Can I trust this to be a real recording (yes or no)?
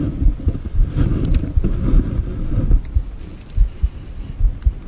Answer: yes